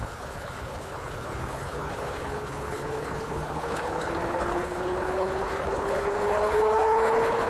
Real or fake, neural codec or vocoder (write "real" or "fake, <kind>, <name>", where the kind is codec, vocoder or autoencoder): fake, codec, HILCodec